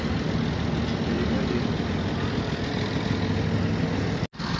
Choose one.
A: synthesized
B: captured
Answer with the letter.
B